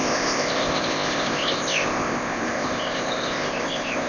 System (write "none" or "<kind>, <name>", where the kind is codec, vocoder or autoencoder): codec, ZipCodec